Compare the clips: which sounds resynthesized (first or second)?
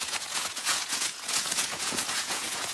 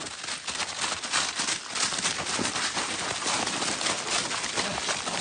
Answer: first